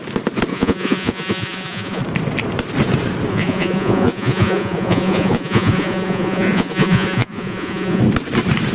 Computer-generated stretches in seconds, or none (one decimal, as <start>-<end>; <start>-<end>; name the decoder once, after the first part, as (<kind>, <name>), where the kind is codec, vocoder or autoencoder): 0.5-2.0 (vocoder, Vocos); 3.3-8.0